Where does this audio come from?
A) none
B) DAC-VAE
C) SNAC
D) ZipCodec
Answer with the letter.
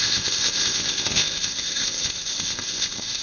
D